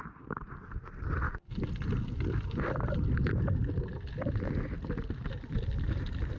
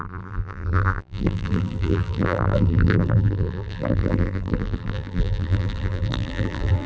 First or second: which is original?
first